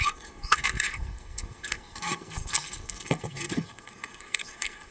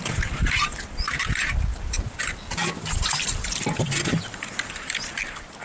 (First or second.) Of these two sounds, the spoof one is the first